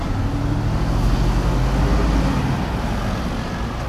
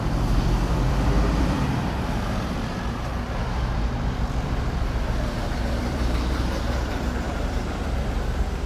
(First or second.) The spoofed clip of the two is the second